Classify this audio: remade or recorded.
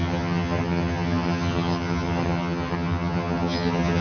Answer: remade